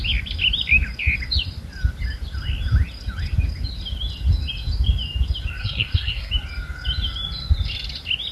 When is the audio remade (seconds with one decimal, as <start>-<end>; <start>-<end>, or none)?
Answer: 5.6-6.3